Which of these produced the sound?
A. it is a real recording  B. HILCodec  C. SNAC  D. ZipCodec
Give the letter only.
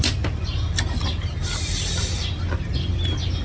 A